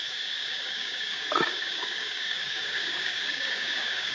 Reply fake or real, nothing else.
fake